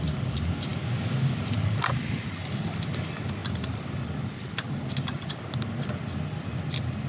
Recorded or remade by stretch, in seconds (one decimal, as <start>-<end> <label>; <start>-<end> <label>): 0.0-7.1 recorded